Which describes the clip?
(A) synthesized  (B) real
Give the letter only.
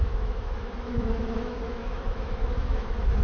A